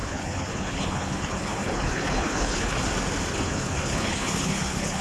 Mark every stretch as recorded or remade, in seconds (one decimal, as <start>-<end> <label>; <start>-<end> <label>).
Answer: 0.0-2.8 remade; 2.8-3.3 recorded; 3.3-5.0 remade